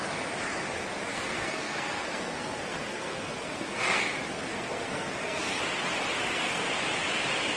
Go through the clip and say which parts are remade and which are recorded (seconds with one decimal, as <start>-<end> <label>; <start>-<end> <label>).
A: 0.0-1.1 recorded; 1.1-4.0 remade; 4.0-4.5 recorded; 4.5-5.6 remade; 5.6-6.2 recorded; 6.2-6.7 remade; 6.7-7.6 recorded